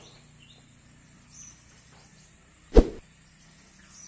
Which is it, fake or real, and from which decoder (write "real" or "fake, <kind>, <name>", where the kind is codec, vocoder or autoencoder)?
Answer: real